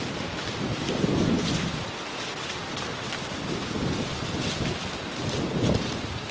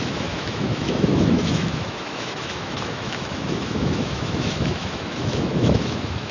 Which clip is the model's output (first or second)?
second